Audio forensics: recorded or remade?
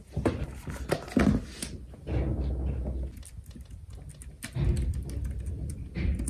recorded